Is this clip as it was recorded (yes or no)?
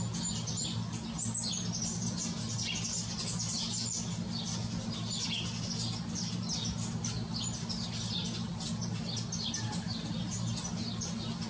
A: yes